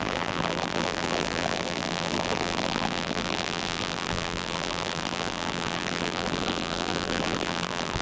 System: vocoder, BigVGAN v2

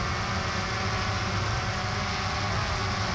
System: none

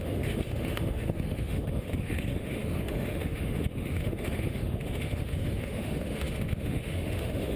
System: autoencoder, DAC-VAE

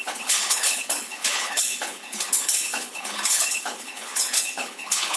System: codec, HILCodec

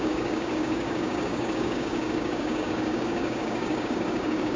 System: codec, DAC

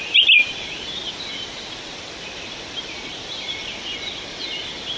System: none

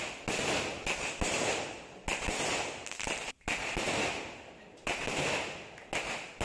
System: none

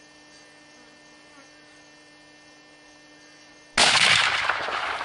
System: none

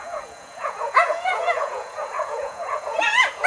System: vocoder, Vocos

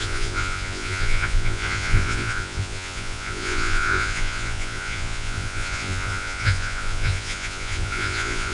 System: vocoder, Vocos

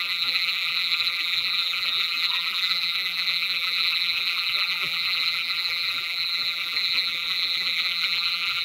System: vocoder, BigVGAN v2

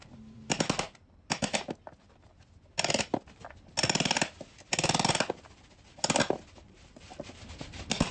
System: none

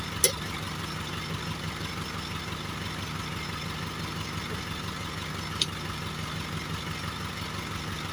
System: none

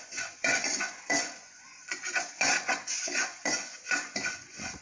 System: vocoder, Vocos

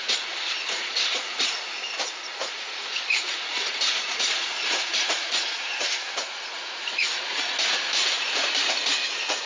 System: vocoder, Vocos